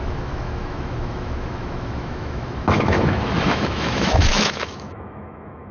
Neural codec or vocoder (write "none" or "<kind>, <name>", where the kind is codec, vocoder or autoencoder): autoencoder, DAC-VAE